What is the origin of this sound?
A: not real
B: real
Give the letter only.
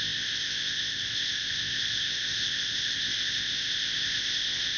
A